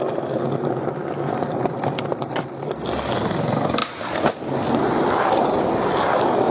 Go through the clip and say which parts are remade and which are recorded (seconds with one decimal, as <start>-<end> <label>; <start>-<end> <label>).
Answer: 0.0-6.5 recorded